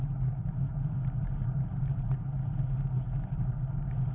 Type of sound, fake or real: real